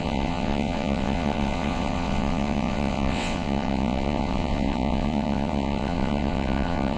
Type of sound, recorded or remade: remade